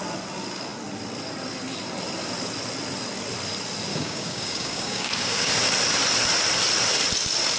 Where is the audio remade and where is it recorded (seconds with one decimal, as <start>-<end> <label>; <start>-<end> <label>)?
0.0-3.9 recorded; 3.9-5.5 remade; 5.5-7.6 recorded